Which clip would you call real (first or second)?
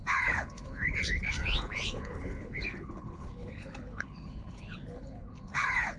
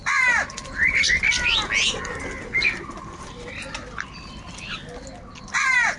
second